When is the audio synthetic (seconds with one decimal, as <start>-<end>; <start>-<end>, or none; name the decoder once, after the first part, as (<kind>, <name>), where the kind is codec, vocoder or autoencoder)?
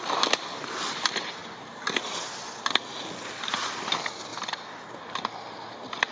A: none